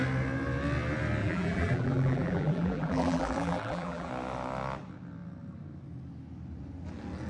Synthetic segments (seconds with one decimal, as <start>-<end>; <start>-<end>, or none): 1.2-4.1